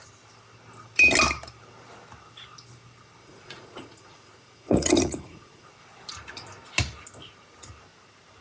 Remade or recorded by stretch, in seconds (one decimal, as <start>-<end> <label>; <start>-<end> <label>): 0.0-3.2 recorded; 3.2-5.7 remade; 5.7-8.4 recorded